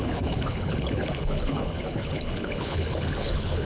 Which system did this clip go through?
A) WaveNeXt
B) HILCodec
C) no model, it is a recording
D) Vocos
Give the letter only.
B